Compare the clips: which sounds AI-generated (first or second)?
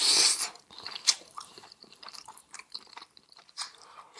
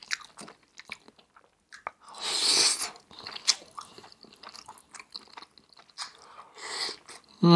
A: first